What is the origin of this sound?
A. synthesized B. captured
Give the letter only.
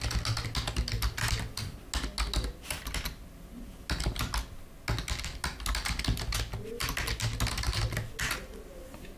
B